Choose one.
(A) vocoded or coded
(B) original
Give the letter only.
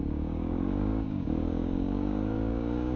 A